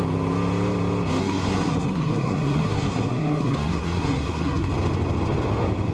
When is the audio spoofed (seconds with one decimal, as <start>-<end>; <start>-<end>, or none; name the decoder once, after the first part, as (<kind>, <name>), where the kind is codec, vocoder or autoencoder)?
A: 1.2-4.7 (codec, SNAC)